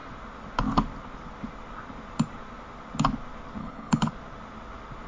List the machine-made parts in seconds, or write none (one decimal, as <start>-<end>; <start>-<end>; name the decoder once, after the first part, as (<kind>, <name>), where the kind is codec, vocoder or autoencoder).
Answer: 3.6-4.1 (codec, HILCodec)